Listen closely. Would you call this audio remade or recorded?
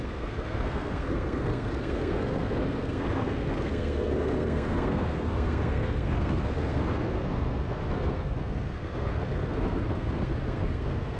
remade